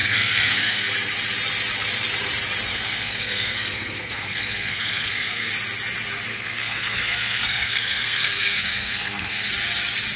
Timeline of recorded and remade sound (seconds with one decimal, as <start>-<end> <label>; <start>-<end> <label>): 0.0-0.9 remade; 0.9-2.7 recorded; 2.7-5.5 remade; 5.5-6.3 recorded; 6.3-9.5 remade; 9.5-10.2 recorded